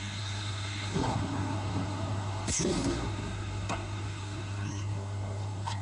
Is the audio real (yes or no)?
no